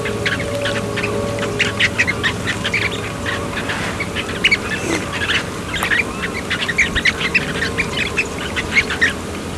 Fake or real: real